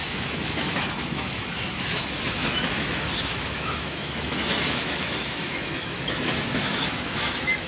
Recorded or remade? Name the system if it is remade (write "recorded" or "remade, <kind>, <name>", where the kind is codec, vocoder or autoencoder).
remade, autoencoder, DAC-VAE